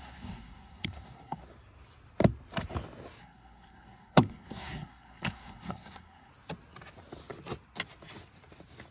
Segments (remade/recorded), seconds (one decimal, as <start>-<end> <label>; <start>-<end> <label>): 0.0-1.4 remade; 1.4-3.2 recorded; 3.2-6.3 remade; 6.3-8.9 recorded

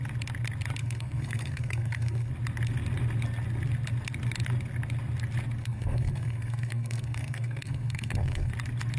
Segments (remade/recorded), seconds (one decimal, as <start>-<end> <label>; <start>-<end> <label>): 0.0-0.8 recorded; 0.8-2.3 remade; 2.3-5.6 recorded; 5.6-8.5 remade; 8.5-9.0 recorded

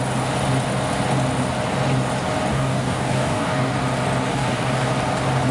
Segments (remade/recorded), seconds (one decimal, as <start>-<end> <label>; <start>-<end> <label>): 0.0-2.5 recorded; 2.5-3.7 remade; 3.7-4.3 recorded; 4.3-4.9 remade; 4.9-5.5 recorded

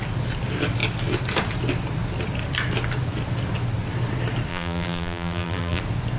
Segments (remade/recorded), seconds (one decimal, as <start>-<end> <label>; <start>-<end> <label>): 0.0-4.5 recorded; 4.5-5.8 remade; 5.8-6.2 recorded

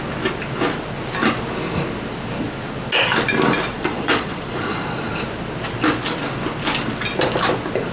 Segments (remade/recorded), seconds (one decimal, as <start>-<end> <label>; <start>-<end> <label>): 0.0-3.7 recorded; 3.7-5.1 remade; 5.1-7.9 recorded

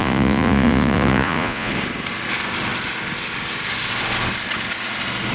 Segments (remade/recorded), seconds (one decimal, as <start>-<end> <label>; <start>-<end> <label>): 0.0-1.7 remade; 1.7-5.3 recorded